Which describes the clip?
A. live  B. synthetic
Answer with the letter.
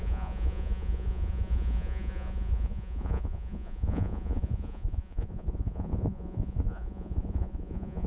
B